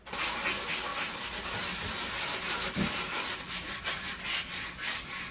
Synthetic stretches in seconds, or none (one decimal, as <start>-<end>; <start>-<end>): none